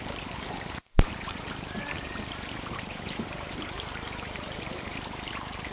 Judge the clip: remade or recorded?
remade